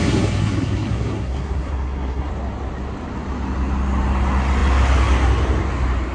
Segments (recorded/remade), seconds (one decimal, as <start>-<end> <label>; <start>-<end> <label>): 0.0-2.3 remade; 2.3-6.1 recorded